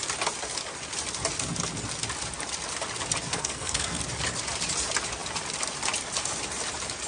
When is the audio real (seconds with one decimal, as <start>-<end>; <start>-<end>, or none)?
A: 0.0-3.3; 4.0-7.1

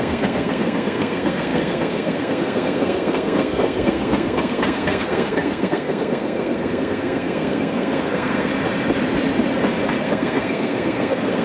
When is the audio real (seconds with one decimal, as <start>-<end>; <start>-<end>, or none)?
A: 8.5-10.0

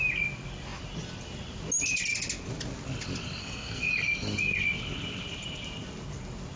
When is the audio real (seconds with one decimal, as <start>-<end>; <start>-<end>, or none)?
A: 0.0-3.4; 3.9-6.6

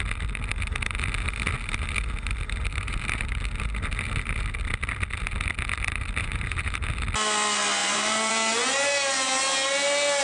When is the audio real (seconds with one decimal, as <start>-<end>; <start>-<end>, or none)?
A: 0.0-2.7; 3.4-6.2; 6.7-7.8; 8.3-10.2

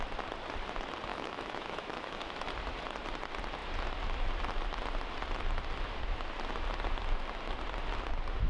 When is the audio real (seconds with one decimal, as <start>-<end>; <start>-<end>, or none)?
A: 0.0-1.1; 2.5-8.5

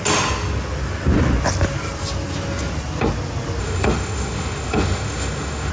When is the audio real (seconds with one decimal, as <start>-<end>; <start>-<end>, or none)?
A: 0.0-3.6